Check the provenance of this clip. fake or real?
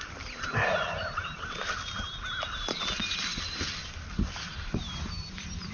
real